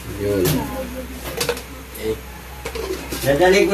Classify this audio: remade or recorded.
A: recorded